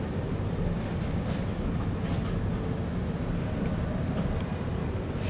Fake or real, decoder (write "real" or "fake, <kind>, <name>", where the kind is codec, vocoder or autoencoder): real